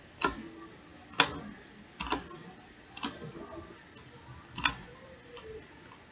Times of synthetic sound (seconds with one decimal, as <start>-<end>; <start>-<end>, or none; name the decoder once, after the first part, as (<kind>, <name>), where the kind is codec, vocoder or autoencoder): none